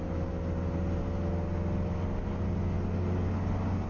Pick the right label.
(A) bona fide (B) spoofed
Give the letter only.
A